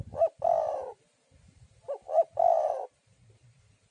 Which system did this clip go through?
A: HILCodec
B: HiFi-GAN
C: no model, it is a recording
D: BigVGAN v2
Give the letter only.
C